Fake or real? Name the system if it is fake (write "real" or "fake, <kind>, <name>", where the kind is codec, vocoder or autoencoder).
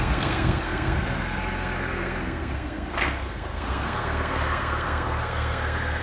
fake, codec, SNAC